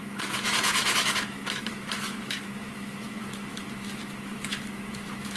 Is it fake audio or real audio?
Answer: fake